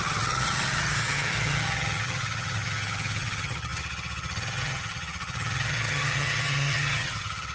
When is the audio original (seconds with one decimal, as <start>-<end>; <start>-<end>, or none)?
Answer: none